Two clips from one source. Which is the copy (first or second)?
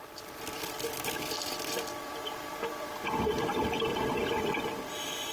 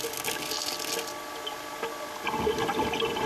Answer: first